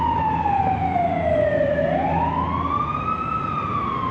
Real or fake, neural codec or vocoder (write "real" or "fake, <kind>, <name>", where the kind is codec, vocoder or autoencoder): real